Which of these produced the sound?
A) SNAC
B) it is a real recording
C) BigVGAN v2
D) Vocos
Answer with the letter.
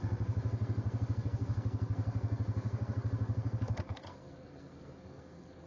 A